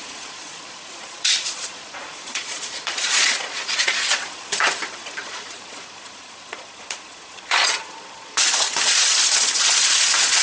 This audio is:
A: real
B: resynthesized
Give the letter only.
B